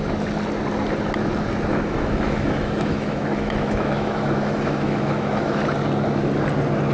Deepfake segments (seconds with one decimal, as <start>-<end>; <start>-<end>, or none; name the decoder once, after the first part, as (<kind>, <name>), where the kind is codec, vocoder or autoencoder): 1.7-5.6 (autoencoder, DAC-VAE)